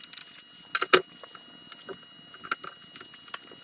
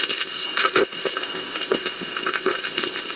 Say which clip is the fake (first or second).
second